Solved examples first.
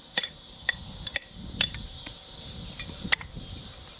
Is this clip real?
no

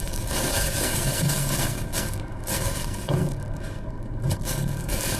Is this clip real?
no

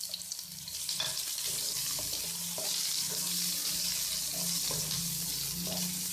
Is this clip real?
yes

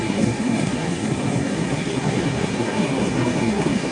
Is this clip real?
no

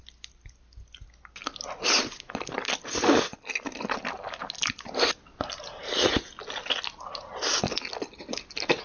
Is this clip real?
yes